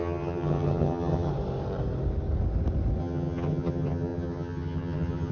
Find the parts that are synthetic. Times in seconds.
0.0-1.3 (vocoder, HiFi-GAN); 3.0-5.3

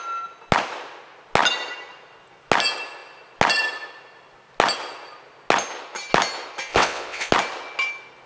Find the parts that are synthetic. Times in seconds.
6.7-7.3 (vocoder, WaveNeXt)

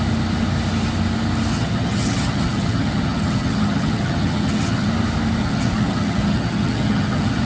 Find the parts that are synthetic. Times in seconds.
1.5-4.9 (vocoder, HiFi-GAN); 5.4-7.4

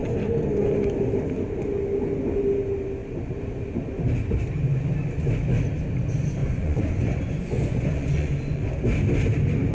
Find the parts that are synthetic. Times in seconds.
6.4-8.7 (vocoder, Vocos)